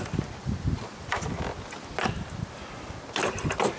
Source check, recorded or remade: recorded